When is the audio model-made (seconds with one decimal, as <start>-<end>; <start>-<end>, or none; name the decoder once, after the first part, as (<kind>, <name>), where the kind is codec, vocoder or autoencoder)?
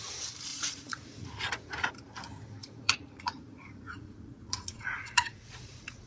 0.5-1.9 (vocoder, Vocos); 2.6-6.1